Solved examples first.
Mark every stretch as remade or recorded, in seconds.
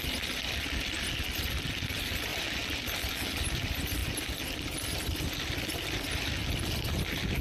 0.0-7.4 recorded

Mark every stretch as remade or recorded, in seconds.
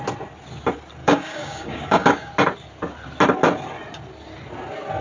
0.0-1.0 recorded; 1.0-2.3 remade; 2.3-5.0 recorded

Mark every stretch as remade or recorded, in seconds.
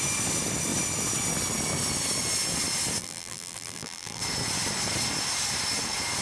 0.0-3.0 recorded; 3.0-4.2 remade; 4.2-6.2 recorded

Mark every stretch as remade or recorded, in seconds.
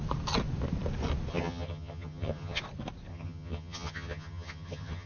0.0-1.3 recorded; 1.3-2.6 remade; 2.6-3.1 recorded; 3.1-5.1 remade